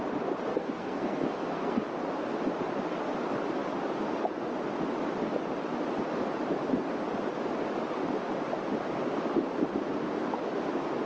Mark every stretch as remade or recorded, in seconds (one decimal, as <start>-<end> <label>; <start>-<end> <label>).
0.0-0.5 recorded; 0.5-1.8 remade; 1.8-11.1 recorded